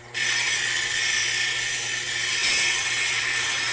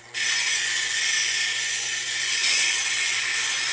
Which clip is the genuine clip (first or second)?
first